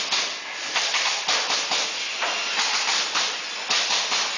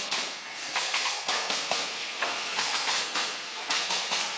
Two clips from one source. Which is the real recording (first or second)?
first